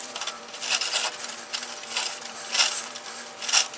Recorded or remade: remade